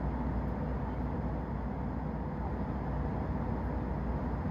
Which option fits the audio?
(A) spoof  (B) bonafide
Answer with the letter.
B